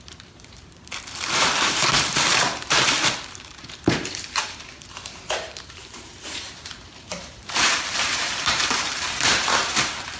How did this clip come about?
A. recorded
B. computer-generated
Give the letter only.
B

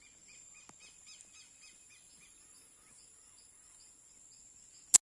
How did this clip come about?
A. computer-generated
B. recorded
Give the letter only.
B